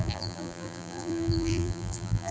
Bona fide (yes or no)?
no